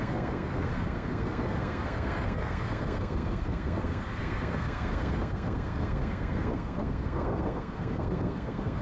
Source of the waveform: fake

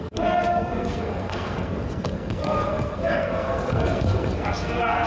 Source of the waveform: fake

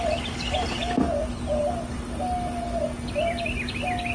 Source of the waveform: real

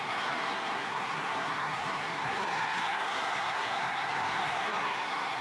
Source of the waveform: fake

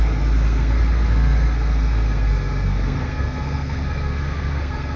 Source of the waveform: fake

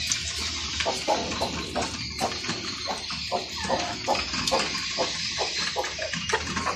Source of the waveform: real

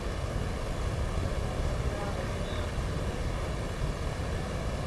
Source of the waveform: real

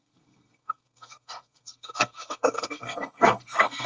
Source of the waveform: fake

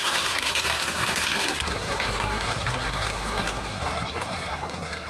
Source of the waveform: fake